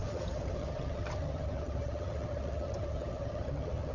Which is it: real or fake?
fake